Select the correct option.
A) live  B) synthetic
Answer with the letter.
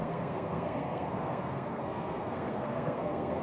B